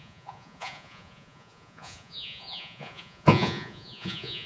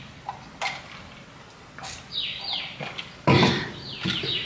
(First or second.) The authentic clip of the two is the second